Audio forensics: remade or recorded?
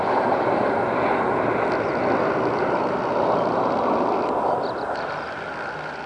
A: recorded